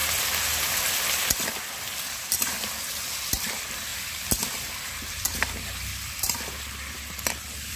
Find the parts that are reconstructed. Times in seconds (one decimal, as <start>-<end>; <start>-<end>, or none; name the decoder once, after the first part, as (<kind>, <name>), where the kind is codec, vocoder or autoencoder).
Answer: 1.8-3.9 (vocoder, BigVGAN v2); 5.1-7.8

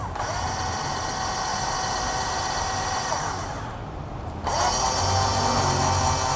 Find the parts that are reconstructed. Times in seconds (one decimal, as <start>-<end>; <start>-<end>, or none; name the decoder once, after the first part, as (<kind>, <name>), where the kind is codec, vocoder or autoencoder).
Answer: 0.0-1.1 (vocoder, BigVGAN v2); 1.5-4.6

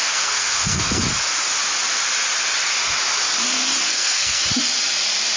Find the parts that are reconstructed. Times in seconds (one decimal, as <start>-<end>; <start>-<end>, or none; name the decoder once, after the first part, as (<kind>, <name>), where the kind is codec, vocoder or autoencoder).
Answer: 0.0-1.0 (codec, SNAC); 3.8-4.4

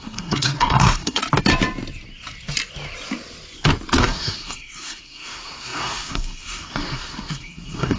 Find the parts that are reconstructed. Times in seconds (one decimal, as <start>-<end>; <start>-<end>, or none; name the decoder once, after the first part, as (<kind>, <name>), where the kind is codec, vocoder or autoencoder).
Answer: 0.0-1.2 (codec, SNAC); 4.0-8.0

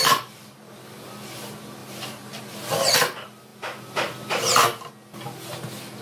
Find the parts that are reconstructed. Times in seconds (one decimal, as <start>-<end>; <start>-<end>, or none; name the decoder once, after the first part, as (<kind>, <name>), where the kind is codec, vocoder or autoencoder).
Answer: 1.8-2.4 (vocoder, BigVGAN v2)